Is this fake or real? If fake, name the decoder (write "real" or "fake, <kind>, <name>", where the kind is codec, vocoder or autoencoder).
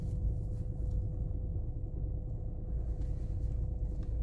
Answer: real